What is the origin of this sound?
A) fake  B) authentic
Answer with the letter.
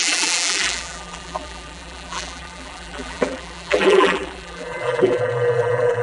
A